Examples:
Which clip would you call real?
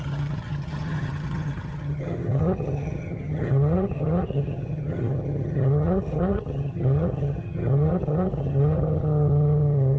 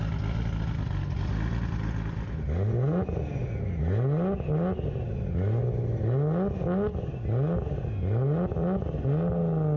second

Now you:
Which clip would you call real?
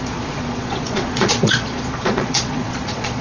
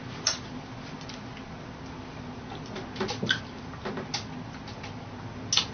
second